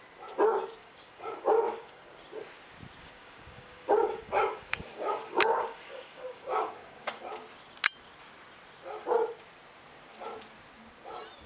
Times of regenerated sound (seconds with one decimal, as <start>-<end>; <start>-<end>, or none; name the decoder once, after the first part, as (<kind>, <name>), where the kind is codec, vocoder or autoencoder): 0.8-2.1 (codec, DAC); 3.0-7.3